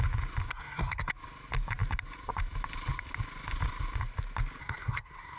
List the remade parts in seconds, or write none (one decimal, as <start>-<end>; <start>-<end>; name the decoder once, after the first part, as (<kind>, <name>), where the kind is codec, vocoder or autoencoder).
0.5-1.1 (codec, SNAC); 4.6-5.4